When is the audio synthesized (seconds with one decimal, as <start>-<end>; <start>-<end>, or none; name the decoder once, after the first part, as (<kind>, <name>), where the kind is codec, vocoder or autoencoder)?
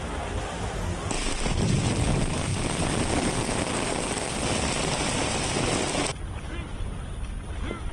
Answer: none